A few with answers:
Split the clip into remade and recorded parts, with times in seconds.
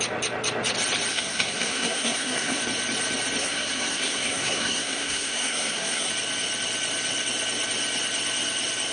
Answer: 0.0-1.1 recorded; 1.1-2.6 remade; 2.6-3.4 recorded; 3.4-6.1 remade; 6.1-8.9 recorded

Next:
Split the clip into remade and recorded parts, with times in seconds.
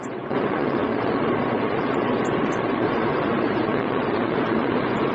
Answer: 0.0-5.1 remade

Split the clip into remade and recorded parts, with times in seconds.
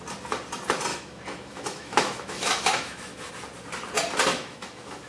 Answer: 0.0-0.9 recorded; 0.9-3.3 remade; 3.3-4.3 recorded; 4.3-5.1 remade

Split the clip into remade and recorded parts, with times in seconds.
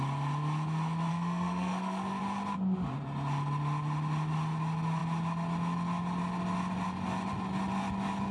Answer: 0.0-1.1 recorded; 1.1-2.2 remade; 2.2-8.3 recorded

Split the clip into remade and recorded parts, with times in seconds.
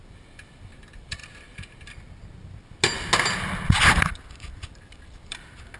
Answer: 0.0-1.2 remade; 1.2-3.9 recorded; 3.9-5.8 remade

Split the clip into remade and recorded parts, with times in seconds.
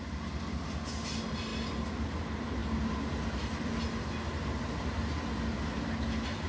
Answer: 0.0-6.5 recorded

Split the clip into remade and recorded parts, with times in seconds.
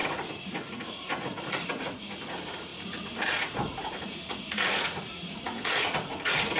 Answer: 0.0-6.6 remade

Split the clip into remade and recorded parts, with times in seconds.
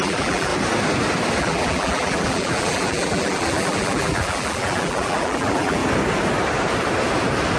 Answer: 0.0-0.5 remade; 0.5-1.4 recorded; 1.4-5.8 remade; 5.8-7.6 recorded